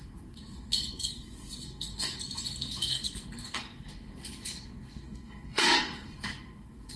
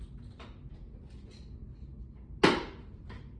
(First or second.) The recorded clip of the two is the second